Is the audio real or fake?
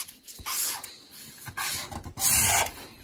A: real